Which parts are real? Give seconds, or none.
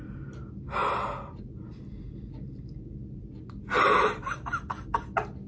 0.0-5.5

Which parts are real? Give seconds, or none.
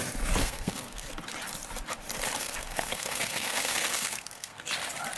0.0-0.4; 1.1-2.4; 4.7-5.2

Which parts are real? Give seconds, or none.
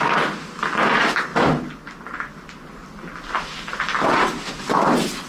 0.0-5.3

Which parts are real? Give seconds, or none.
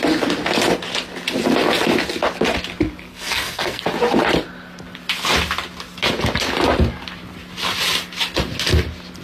0.0-3.1; 3.8-9.2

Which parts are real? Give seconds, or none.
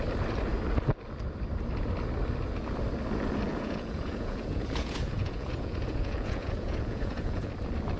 0.0-3.5; 7.5-8.0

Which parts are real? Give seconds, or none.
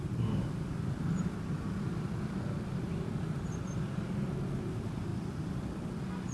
0.0-6.3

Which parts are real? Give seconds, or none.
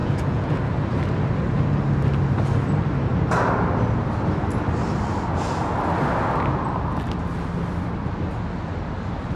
0.6-9.3